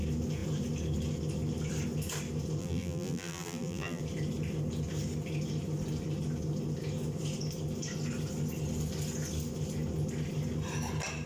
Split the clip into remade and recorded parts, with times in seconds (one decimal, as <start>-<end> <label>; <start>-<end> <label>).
0.0-2.6 recorded; 2.6-4.0 remade; 4.0-11.3 recorded